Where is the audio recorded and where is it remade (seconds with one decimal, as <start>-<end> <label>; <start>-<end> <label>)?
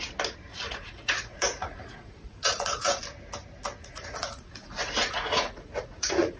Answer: 0.0-0.5 recorded; 0.5-3.0 remade; 3.0-3.8 recorded; 3.8-6.4 remade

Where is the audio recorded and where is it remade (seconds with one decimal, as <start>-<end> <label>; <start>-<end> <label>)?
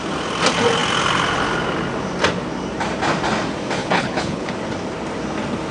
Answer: 0.0-3.8 recorded; 3.8-4.5 remade; 4.5-5.7 recorded